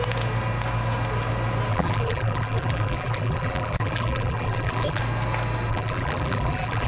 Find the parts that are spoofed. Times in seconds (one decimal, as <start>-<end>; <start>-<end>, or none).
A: 1.7-5.0; 5.7-6.9